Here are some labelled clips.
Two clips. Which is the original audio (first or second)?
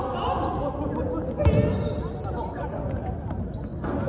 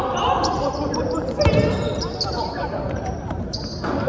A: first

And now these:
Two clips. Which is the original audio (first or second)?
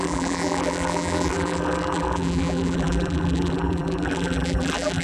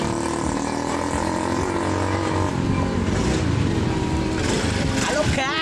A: second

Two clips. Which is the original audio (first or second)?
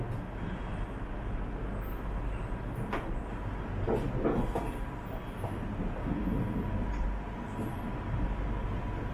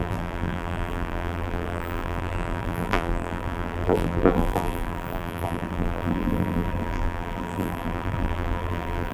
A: first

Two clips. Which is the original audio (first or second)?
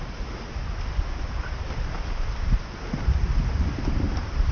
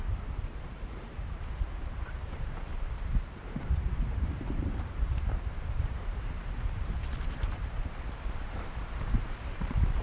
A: first